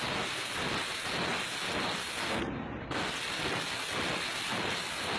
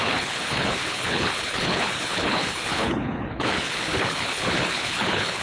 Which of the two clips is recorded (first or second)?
first